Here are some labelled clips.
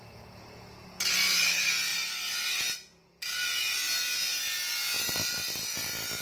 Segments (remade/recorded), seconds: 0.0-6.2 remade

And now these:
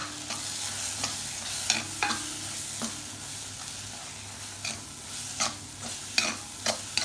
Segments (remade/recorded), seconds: 0.0-7.0 recorded